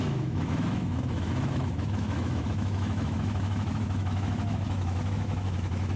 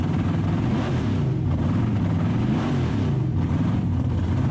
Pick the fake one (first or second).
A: first